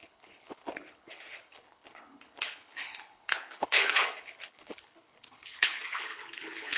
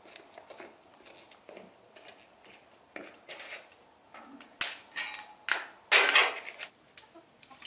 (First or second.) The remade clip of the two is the first